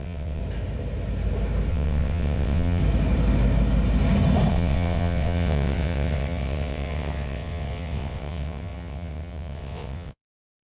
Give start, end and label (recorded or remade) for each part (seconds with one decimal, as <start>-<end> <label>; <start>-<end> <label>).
0.0-0.4 remade; 0.4-1.7 recorded; 1.7-2.8 remade; 2.8-4.5 recorded; 4.5-10.6 remade